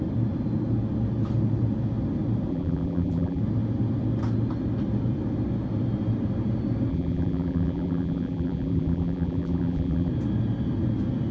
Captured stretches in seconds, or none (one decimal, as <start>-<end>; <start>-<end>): 0.0-2.5; 3.4-6.9; 10.1-11.3